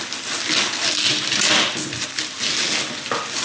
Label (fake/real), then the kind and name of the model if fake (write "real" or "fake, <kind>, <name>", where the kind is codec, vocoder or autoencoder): real